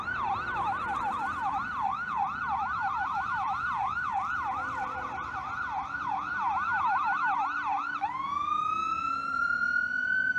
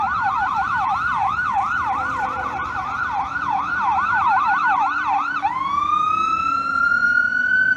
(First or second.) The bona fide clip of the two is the first